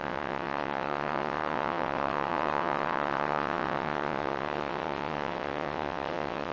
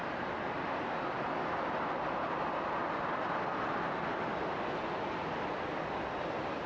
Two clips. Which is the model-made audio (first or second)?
first